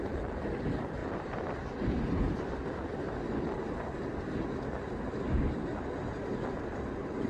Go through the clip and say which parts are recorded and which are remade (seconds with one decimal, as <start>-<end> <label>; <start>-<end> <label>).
0.0-7.3 recorded